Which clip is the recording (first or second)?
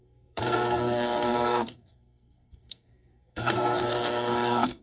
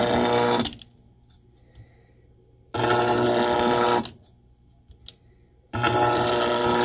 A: second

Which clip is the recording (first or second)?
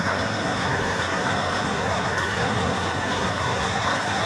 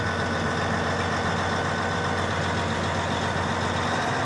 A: second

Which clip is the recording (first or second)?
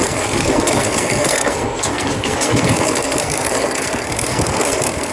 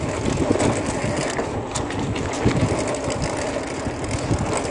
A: second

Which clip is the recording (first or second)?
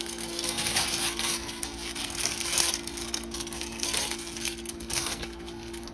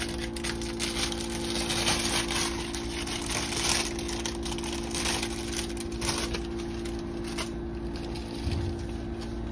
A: second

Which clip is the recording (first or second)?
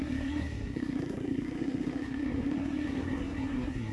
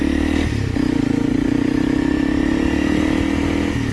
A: second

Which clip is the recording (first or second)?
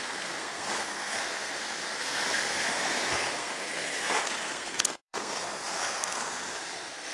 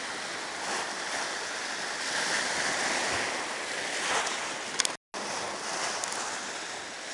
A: second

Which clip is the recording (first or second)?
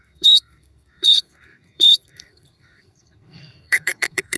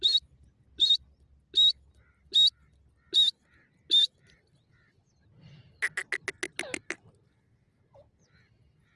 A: second